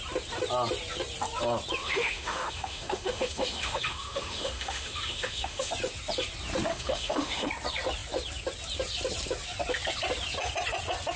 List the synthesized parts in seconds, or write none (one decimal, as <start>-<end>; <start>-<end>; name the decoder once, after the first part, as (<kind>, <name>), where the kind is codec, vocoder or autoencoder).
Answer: 1.8-5.7 (autoencoder, DAC-VAE); 6.7-7.5